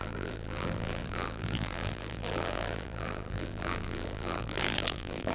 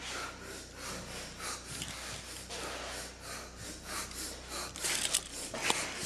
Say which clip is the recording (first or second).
second